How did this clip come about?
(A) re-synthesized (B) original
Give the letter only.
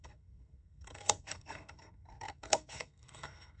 A